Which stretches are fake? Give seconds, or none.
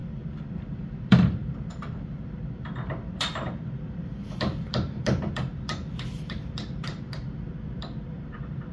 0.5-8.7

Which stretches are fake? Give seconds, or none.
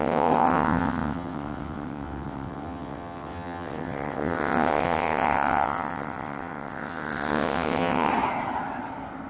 0.0-8.1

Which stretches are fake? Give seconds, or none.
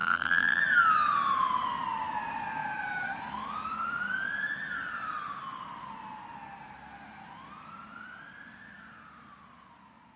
0.0-0.6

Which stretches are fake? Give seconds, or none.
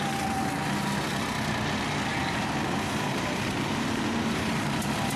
2.1-5.2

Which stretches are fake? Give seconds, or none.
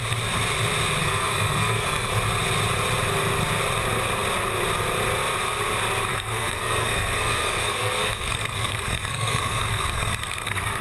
1.0-2.1; 6.1-10.8